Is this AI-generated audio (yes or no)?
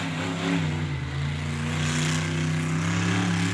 no